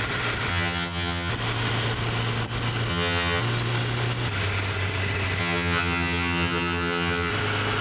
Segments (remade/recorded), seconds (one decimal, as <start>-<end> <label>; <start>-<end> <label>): 0.0-0.5 recorded; 0.5-1.3 remade; 1.3-2.9 recorded; 2.9-3.4 remade; 3.4-5.4 recorded; 5.4-7.3 remade; 7.3-7.8 recorded